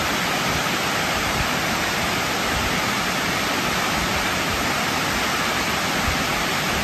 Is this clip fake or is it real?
real